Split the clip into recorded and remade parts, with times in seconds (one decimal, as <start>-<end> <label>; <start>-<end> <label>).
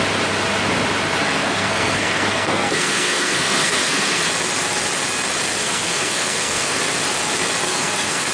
0.0-1.2 recorded; 1.2-4.2 remade; 4.2-5.6 recorded; 5.6-6.8 remade; 6.8-7.6 recorded; 7.6-8.3 remade